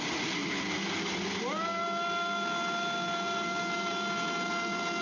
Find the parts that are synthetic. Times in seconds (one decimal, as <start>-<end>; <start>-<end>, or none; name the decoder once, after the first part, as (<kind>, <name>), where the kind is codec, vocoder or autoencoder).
none